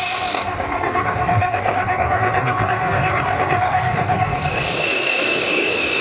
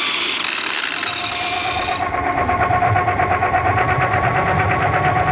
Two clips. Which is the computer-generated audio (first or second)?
first